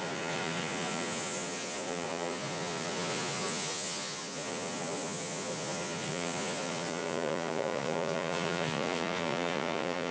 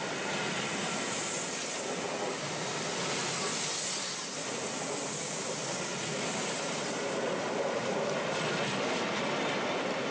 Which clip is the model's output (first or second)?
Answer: first